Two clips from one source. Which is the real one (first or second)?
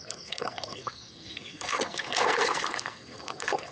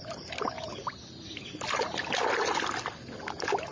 second